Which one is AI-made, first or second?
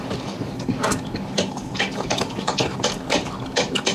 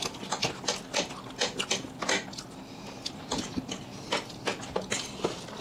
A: first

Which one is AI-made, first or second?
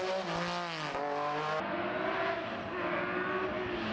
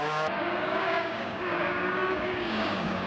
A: second